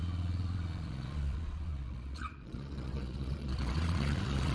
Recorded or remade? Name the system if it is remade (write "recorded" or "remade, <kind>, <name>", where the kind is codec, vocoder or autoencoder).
remade, vocoder, Vocos